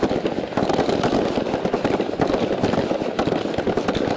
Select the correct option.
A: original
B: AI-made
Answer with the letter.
A